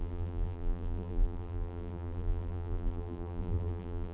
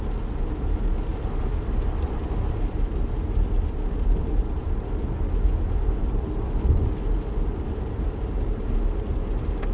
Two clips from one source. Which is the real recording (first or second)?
second